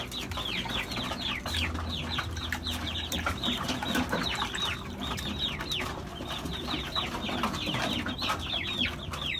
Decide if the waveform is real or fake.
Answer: real